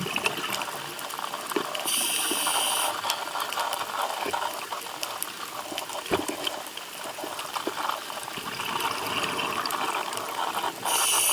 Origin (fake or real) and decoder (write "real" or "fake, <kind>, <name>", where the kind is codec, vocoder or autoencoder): real